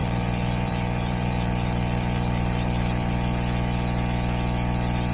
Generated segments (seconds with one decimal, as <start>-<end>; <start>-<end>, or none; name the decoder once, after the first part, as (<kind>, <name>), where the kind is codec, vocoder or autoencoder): 0.0-3.1 (vocoder, BigVGAN v2)

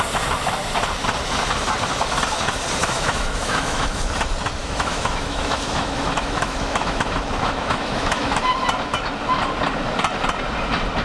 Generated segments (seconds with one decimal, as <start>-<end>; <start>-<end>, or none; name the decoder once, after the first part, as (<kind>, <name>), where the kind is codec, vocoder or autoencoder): 2.8-4.0 (autoencoder, DAC-VAE); 4.6-8.4